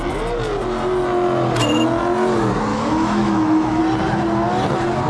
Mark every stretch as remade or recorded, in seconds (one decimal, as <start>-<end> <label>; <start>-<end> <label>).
0.0-2.7 recorded; 2.7-3.8 remade; 3.8-5.1 recorded